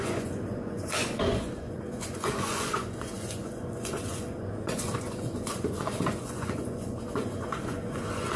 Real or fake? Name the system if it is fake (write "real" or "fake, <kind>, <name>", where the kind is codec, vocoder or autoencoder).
fake, vocoder, Vocos